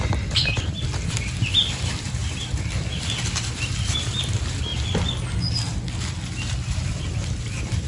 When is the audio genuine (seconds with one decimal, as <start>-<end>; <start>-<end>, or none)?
2.2-2.9; 4.7-6.7